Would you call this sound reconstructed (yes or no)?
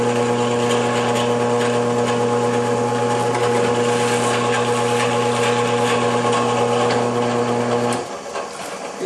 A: no